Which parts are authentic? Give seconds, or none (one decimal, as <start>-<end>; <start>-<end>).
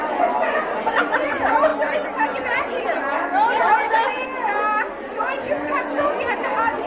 0.0-6.9